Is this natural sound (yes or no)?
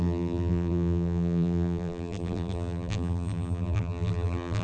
no